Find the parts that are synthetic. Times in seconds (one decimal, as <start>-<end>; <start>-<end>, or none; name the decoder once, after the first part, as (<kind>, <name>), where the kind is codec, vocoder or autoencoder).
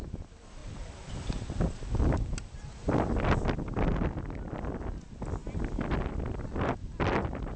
none